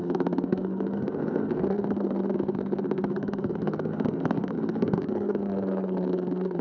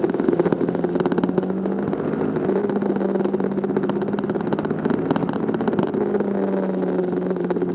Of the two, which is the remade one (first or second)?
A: first